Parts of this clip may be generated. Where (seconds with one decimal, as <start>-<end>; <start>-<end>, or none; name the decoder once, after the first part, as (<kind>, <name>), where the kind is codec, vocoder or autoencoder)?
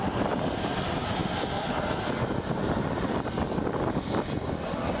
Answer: none